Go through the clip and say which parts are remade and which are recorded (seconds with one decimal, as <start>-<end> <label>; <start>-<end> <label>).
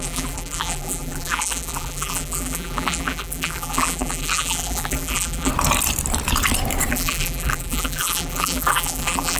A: 0.0-5.5 remade; 5.5-6.9 recorded; 6.9-9.4 remade